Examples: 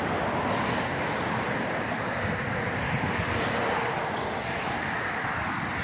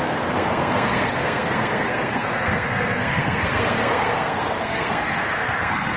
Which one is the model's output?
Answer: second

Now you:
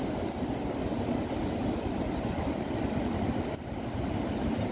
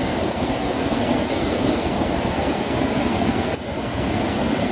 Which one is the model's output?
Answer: second